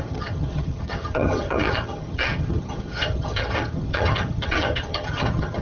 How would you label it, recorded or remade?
remade